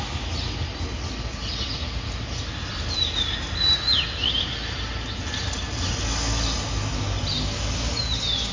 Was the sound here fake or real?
real